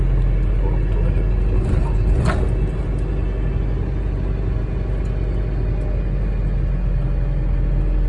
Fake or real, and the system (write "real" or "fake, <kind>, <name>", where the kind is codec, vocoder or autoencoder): real